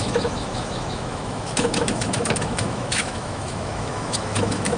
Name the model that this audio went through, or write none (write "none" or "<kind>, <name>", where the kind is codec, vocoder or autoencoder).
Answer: autoencoder, DAC-VAE